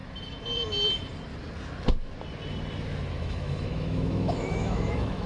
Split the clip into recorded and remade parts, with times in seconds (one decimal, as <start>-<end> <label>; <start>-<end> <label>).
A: 0.0-3.2 recorded; 3.2-5.3 remade